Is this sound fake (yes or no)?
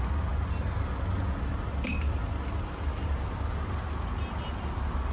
no